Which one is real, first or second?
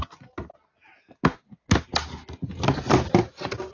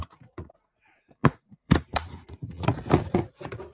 first